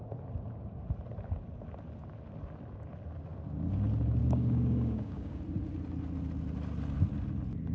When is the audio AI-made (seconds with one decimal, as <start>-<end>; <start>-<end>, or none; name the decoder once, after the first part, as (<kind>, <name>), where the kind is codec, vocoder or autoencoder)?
4.2-5.4 (codec, DAC)